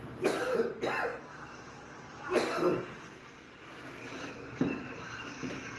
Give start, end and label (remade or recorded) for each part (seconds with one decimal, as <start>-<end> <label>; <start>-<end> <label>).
0.0-5.8 recorded